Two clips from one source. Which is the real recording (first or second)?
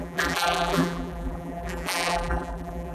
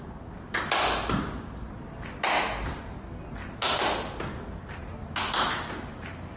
second